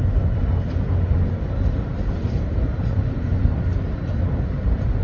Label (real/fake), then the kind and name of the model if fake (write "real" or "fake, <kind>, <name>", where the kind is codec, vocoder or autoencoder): real